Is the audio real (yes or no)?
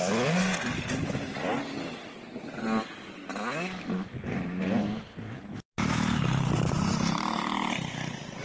yes